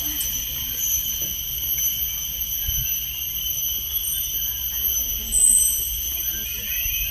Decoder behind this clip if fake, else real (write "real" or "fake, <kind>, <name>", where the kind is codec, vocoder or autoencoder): real